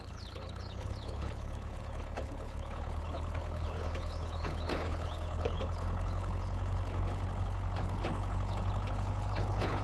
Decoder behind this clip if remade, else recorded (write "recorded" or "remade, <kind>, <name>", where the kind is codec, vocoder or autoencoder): remade, codec, HILCodec